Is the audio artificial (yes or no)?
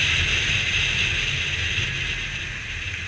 no